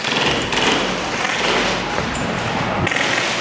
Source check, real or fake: real